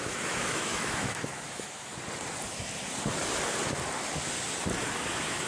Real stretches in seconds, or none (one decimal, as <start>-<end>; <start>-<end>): 1.9-5.1